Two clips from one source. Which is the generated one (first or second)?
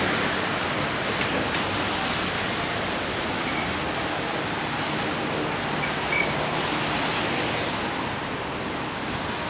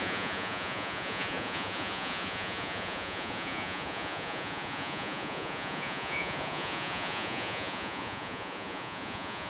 second